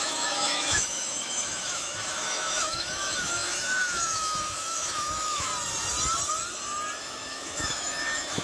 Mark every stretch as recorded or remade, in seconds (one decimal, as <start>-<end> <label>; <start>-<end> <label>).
0.0-5.5 remade; 5.5-7.0 recorded; 7.0-8.4 remade